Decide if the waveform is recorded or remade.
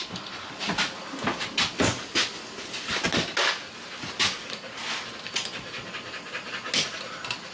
recorded